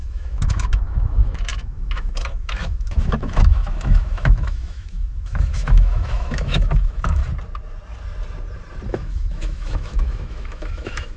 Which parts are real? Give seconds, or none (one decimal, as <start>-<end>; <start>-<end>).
7.2-8.9